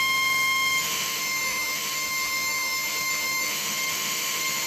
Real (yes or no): no